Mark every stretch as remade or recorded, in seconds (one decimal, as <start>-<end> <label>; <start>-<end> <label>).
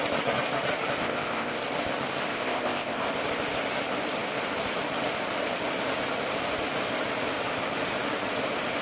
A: 0.0-1.0 recorded; 1.0-1.6 remade; 1.6-2.3 recorded; 2.3-3.0 remade; 3.0-8.8 recorded